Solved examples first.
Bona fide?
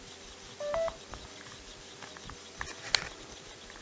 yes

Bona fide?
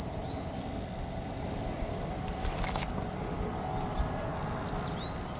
yes